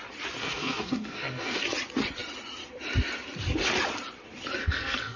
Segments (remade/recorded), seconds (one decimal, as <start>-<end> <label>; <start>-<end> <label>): 0.0-0.4 recorded; 0.4-1.6 remade; 1.6-4.6 recorded; 4.6-5.2 remade

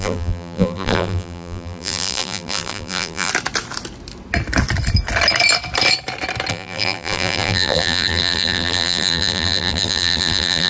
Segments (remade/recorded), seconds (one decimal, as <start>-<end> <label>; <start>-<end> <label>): 0.0-3.3 remade; 3.3-6.5 recorded; 6.5-10.7 remade